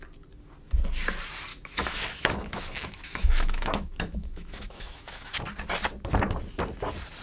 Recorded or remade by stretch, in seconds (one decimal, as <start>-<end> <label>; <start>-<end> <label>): 0.0-1.5 recorded; 1.5-5.3 remade; 5.3-7.2 recorded